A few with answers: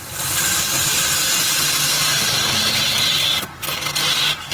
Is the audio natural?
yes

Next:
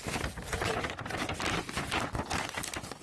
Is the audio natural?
yes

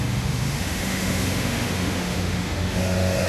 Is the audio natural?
no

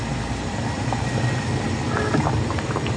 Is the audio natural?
yes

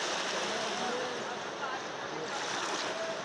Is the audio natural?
yes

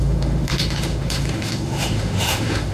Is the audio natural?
no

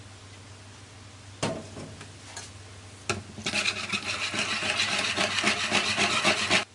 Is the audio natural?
yes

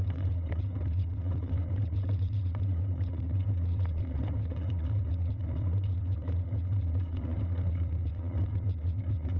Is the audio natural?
no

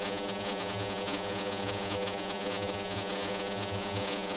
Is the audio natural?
no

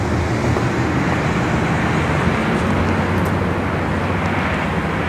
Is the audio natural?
yes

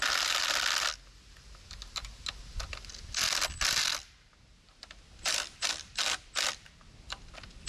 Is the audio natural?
yes